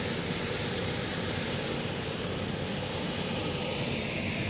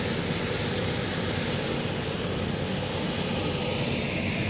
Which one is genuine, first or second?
second